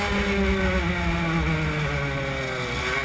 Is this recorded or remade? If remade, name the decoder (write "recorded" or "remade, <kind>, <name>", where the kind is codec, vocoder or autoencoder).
recorded